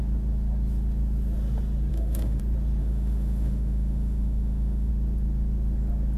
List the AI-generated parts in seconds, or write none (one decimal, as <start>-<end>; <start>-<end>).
1.9-2.4; 2.8-4.9